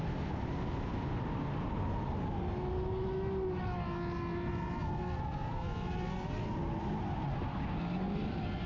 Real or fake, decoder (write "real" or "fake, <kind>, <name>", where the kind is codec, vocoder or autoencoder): real